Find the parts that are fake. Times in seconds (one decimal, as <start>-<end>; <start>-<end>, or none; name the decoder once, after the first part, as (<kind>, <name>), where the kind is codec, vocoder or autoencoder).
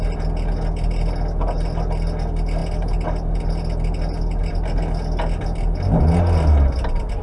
none